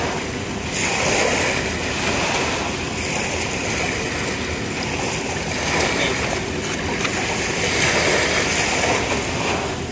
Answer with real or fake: real